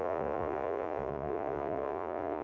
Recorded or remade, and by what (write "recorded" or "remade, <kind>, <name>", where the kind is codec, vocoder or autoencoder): remade, vocoder, Vocos